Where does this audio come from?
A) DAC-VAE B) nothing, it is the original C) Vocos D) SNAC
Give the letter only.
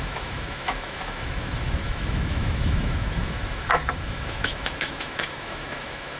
A